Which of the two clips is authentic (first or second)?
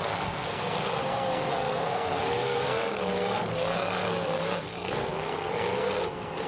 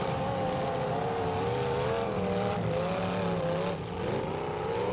second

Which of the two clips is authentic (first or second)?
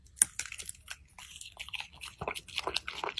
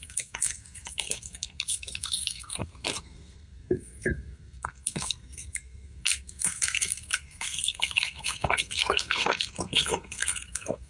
first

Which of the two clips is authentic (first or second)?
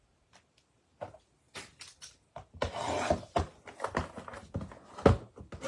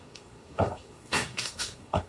first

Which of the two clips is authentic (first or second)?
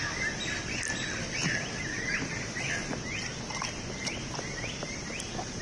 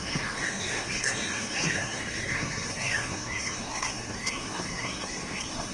first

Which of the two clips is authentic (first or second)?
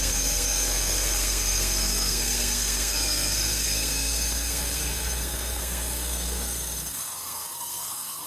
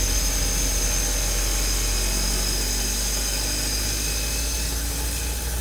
second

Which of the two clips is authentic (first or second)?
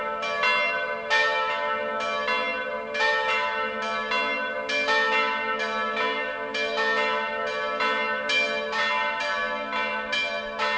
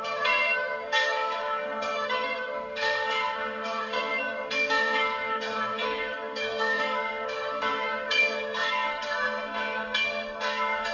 first